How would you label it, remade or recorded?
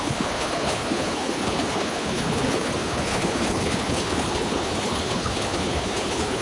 remade